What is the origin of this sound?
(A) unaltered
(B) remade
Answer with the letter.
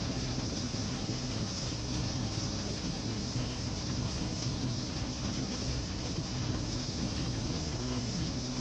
B